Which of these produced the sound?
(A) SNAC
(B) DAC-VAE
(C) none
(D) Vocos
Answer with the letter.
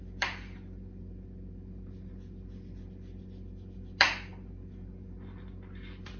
C